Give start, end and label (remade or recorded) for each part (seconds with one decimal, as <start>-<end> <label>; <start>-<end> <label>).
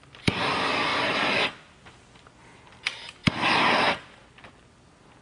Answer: 0.0-5.2 recorded